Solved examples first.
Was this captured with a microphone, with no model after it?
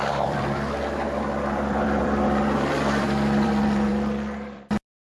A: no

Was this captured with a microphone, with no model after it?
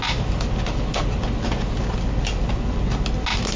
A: yes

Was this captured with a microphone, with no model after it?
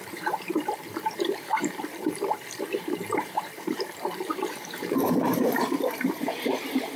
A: no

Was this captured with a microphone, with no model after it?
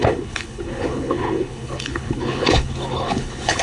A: no